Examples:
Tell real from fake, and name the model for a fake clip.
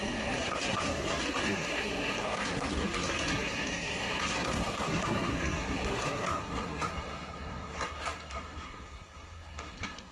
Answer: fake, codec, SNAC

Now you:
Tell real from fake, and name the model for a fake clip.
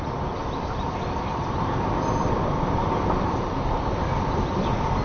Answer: fake, vocoder, BigVGAN v2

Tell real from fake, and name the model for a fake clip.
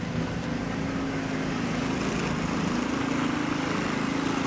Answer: real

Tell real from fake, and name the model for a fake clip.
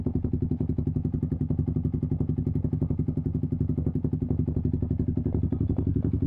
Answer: real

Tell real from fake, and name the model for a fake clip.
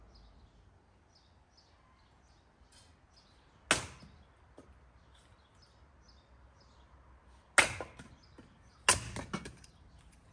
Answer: real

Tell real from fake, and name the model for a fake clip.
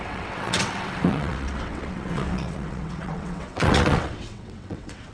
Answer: fake, vocoder, WaveNeXt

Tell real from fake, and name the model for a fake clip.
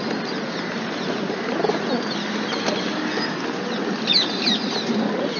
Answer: real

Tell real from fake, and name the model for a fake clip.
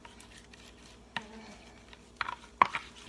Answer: real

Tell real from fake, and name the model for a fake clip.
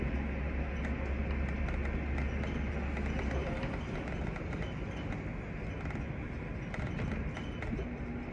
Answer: real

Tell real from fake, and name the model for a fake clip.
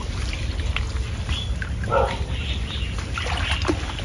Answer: real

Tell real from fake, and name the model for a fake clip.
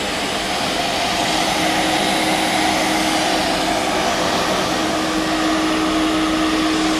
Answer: real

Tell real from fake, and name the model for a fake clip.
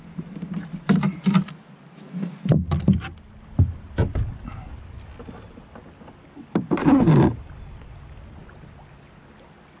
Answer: real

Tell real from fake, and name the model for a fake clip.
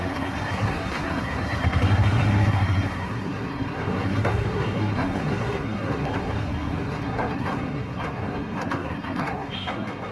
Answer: fake, codec, SNAC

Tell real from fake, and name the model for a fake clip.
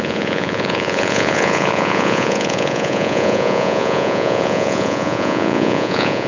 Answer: fake, vocoder, Vocos